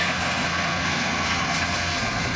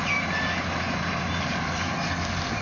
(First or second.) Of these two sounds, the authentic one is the second